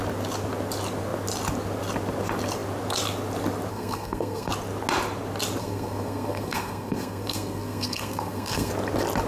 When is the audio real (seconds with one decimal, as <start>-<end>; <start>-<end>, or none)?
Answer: 0.0-3.7; 4.5-5.6; 8.7-9.3